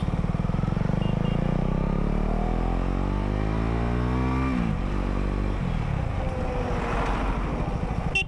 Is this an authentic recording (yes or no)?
yes